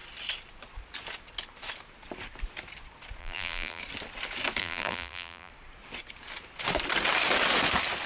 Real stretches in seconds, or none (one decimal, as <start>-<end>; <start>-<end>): 0.0-3.2; 3.8-4.6; 5.5-8.1